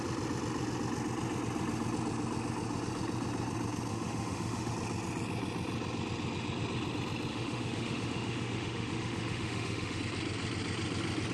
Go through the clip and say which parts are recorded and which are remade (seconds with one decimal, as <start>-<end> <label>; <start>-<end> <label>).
0.0-3.9 recorded; 3.9-4.7 remade; 4.7-7.3 recorded; 7.3-10.0 remade; 10.0-11.3 recorded